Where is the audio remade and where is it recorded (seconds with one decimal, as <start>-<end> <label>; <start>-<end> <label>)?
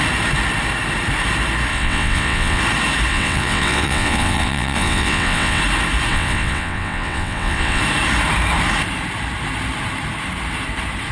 0.0-1.7 recorded; 1.7-2.6 remade; 2.6-3.1 recorded; 3.1-5.6 remade; 5.6-6.1 recorded; 6.1-7.8 remade; 7.8-11.1 recorded